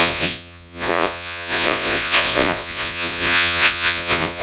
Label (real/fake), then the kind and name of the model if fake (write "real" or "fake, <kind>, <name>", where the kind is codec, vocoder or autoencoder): fake, vocoder, Vocos